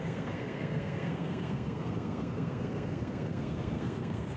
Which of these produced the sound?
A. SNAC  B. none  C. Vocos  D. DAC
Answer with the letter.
A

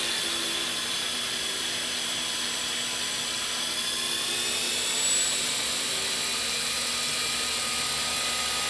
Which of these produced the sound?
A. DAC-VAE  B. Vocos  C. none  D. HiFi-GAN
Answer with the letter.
C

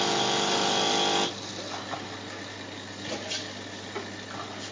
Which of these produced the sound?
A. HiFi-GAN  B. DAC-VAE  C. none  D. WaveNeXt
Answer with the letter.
C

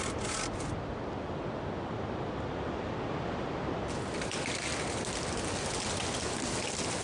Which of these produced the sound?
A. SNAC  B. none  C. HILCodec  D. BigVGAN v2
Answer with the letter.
B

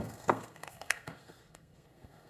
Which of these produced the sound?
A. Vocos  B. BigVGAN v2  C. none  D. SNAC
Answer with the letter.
D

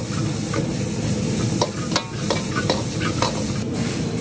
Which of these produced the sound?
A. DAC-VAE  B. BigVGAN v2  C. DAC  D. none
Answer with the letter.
D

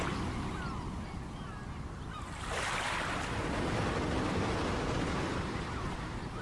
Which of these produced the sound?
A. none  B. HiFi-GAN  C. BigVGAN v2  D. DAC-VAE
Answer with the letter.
C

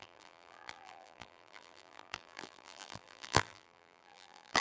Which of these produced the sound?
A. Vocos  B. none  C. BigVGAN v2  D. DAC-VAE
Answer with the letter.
C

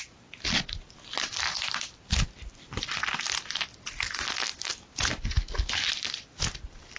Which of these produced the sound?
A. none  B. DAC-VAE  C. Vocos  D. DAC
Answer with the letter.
A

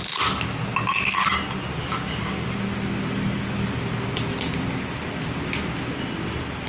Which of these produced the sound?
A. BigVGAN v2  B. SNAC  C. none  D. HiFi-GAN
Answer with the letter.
C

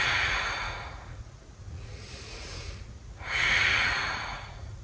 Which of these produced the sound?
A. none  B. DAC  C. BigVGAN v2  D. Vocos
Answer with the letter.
D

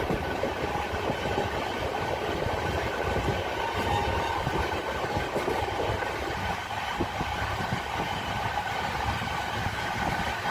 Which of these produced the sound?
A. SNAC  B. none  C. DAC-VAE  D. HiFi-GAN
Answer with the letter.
B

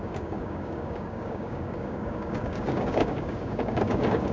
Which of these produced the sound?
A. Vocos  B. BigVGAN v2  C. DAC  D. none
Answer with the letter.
C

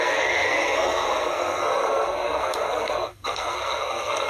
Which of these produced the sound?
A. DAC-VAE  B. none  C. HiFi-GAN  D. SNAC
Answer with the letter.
D